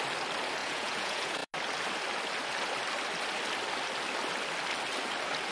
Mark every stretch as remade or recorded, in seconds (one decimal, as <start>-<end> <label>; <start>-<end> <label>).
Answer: 0.0-0.6 recorded; 0.6-1.5 remade; 1.5-5.5 recorded